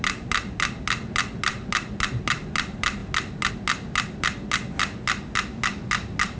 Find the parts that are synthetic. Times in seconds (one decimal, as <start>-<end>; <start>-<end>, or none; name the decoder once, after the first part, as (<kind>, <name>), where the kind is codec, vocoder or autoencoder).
none